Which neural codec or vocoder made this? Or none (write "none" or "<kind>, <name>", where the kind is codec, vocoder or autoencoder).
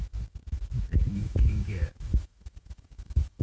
autoencoder, DAC-VAE